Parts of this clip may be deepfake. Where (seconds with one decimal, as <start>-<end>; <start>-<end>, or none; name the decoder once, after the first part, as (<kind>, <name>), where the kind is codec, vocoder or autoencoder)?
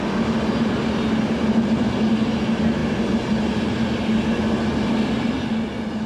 none